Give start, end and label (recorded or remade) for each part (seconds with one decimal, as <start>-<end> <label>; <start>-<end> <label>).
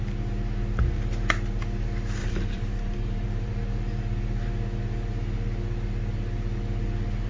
0.0-2.2 recorded; 2.2-3.5 remade; 3.5-7.3 recorded